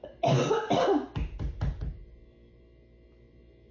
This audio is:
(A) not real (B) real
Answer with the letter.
B